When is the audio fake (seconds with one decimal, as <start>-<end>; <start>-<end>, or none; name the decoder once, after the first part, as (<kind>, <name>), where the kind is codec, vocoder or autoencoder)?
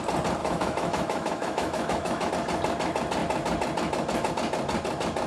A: 0.4-2.3 (autoencoder, DAC-VAE)